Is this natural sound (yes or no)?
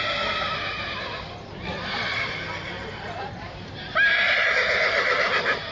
yes